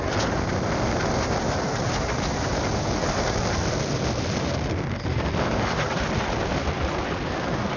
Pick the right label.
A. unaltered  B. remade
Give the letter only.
A